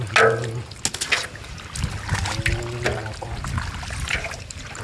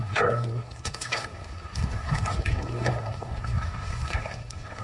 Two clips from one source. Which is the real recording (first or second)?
first